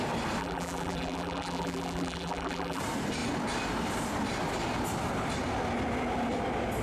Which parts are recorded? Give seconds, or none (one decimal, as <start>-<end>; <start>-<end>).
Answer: 0.0-0.4; 2.8-6.8